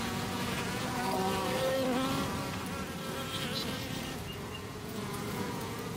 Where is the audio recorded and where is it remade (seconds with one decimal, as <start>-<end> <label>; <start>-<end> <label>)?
0.0-1.0 remade; 1.0-4.5 recorded; 4.5-6.0 remade